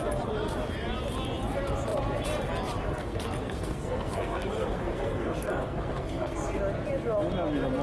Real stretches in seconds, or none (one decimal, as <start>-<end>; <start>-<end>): 0.0-2.8; 6.6-7.8